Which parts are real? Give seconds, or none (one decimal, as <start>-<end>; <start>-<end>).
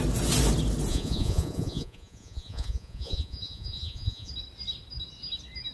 0.0-0.9; 4.3-5.7